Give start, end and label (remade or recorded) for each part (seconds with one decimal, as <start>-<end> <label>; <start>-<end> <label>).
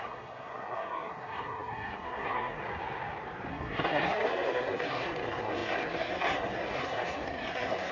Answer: 0.0-2.6 remade; 2.6-3.5 recorded; 3.5-7.9 remade